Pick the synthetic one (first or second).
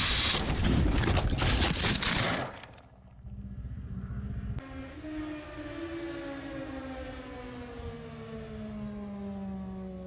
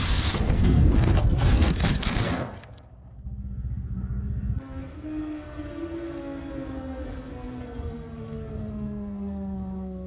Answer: second